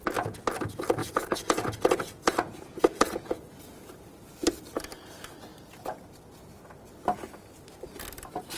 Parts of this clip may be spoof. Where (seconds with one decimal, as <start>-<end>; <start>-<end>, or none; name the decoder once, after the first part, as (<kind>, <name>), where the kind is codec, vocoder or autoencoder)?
1.0-3.9 (vocoder, Vocos)